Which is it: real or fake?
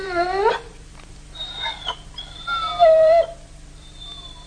fake